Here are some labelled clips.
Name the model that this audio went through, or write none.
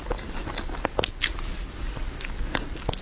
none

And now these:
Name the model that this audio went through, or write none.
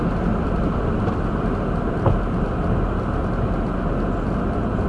none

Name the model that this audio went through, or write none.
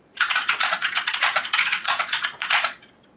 vocoder, Vocos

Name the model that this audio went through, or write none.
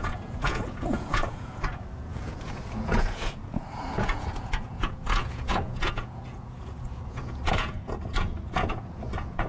vocoder, Vocos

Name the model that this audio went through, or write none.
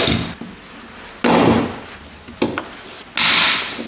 none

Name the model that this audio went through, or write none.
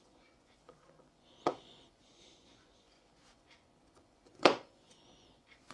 vocoder, Vocos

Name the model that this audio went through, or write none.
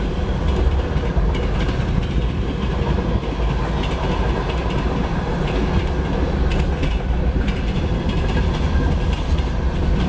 none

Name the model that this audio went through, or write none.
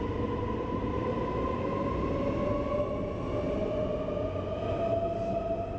none